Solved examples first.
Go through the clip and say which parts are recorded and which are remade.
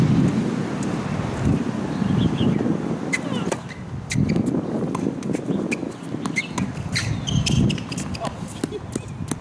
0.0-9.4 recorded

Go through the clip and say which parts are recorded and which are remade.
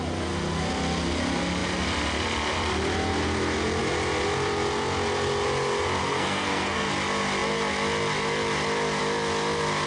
0.0-6.0 recorded; 6.0-6.9 remade; 6.9-9.9 recorded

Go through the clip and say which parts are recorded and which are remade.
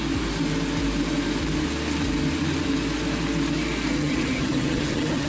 0.0-4.0 recorded; 4.0-5.3 remade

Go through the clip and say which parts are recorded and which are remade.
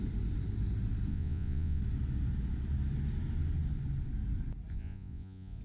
0.0-1.1 recorded; 1.1-1.8 remade; 1.8-4.7 recorded; 4.7-5.6 remade